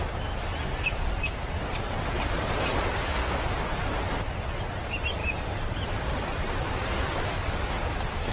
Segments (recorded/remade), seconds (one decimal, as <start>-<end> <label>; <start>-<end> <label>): 0.0-8.3 recorded